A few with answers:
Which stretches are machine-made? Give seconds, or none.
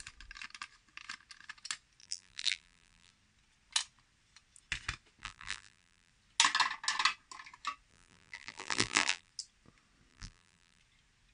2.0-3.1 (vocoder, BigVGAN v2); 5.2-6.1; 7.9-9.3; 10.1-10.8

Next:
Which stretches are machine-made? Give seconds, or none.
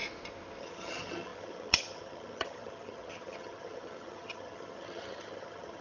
0.6-5.8 (vocoder, HiFi-GAN)